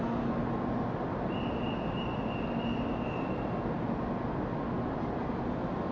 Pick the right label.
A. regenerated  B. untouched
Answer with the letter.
B